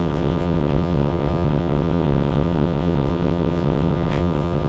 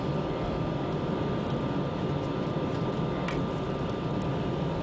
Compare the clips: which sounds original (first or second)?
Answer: second